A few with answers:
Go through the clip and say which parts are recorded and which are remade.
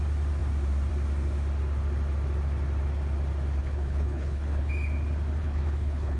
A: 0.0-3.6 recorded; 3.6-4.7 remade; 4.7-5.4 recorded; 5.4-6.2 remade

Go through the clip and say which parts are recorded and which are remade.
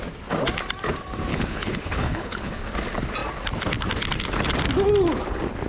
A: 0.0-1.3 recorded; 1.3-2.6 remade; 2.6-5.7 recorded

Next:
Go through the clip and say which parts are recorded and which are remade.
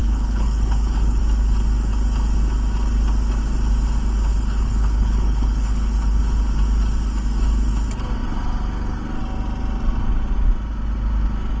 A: 0.0-1.2 remade; 1.2-4.3 recorded; 4.3-6.2 remade; 6.2-11.6 recorded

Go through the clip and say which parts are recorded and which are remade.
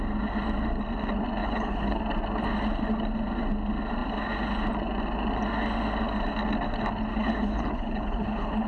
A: 0.0-1.4 recorded; 1.4-2.0 remade; 2.0-7.1 recorded; 7.1-8.7 remade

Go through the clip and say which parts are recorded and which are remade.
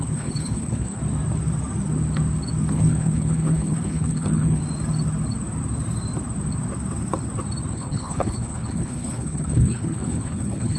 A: 0.0-1.0 remade; 1.0-2.7 recorded; 2.7-4.6 remade; 4.6-7.7 recorded; 7.7-10.8 remade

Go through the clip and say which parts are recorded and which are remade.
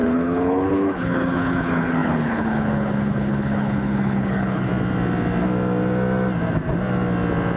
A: 0.0-4.7 remade; 4.7-7.6 recorded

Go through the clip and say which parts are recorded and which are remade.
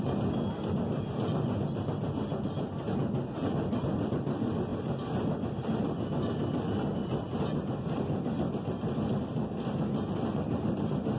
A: 0.0-11.2 recorded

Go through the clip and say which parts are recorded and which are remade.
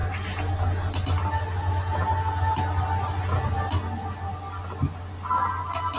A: 0.0-6.0 recorded